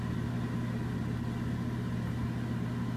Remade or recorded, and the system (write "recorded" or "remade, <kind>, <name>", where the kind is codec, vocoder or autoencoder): recorded